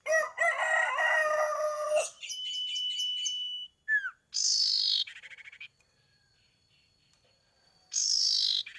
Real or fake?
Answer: real